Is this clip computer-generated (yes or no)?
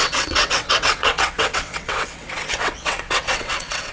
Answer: yes